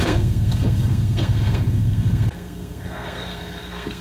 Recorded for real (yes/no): no